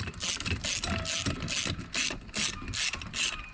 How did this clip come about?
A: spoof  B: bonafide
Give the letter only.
B